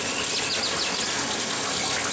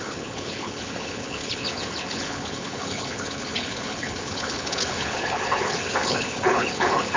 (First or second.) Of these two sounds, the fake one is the second